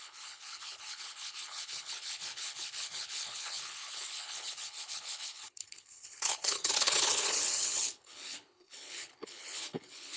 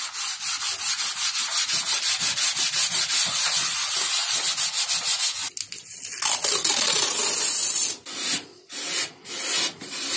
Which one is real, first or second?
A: second